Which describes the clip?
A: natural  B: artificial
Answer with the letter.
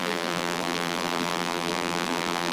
B